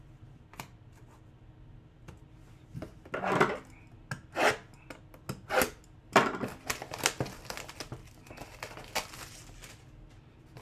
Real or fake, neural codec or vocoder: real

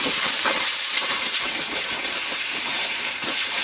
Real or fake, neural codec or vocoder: fake, vocoder, BigVGAN v2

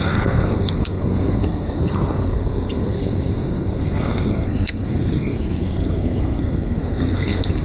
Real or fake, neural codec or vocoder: fake, codec, SNAC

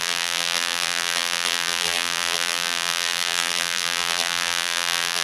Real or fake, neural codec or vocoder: fake, vocoder, BigVGAN v2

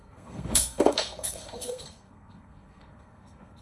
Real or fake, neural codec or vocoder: fake, codec, SNAC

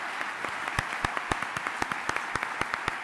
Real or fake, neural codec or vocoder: real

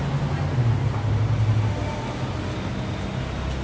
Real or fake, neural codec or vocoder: real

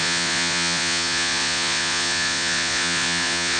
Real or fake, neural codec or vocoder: fake, vocoder, Vocos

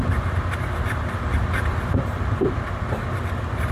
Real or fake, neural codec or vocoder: fake, vocoder, BigVGAN v2